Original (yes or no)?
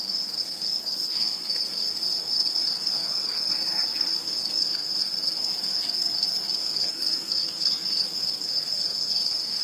no